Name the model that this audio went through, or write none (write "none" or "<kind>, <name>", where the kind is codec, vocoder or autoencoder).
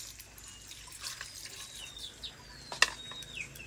none